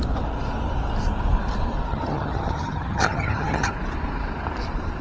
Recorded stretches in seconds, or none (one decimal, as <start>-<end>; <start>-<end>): 0.0-1.9; 3.7-5.0